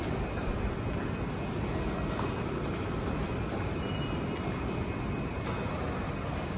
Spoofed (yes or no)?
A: no